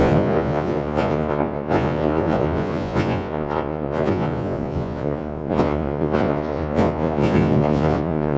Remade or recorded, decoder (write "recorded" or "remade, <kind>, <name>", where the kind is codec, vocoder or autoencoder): remade, vocoder, Vocos